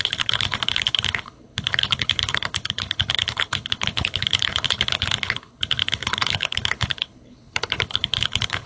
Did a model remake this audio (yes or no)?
yes